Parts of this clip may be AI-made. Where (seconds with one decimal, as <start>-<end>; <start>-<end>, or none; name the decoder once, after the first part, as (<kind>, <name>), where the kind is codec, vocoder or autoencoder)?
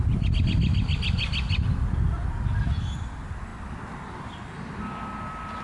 none